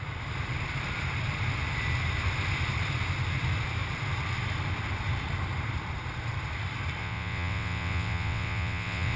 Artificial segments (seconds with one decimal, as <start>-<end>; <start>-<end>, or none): 7.0-9.2